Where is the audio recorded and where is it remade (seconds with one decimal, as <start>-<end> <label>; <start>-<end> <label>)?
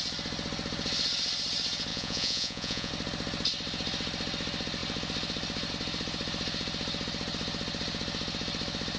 0.0-1.9 recorded; 1.9-2.9 remade; 2.9-9.0 recorded